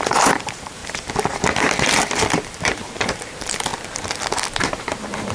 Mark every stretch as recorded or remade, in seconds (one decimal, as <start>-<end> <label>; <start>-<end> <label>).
0.0-0.8 remade; 0.8-2.3 recorded; 2.3-3.7 remade; 3.7-4.6 recorded; 4.6-5.3 remade